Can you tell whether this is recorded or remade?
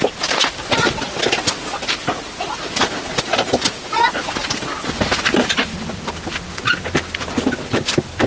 recorded